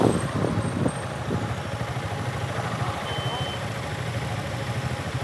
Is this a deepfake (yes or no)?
no